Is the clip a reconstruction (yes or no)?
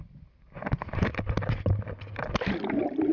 no